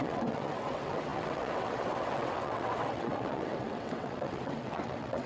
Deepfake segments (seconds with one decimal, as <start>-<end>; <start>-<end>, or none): 0.0-5.3